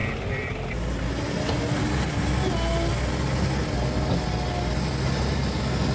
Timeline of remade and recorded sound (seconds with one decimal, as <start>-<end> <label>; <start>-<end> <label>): 0.0-5.9 recorded